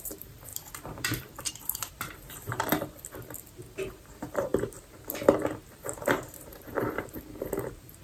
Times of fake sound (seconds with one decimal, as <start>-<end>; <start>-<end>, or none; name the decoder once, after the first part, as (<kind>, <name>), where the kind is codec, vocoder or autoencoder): 0.0-2.7 (vocoder, BigVGAN v2); 3.5-4.5; 5.8-8.0